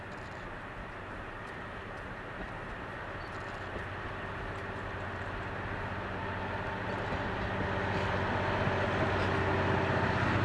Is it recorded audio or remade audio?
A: recorded